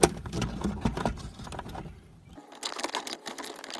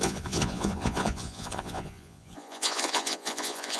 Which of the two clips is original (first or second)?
first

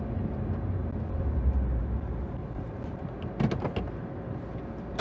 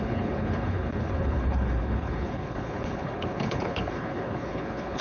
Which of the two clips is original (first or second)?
first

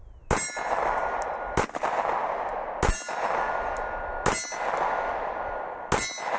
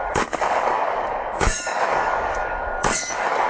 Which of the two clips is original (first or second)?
first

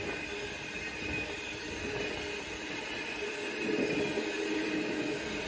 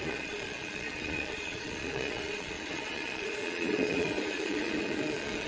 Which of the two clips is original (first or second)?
first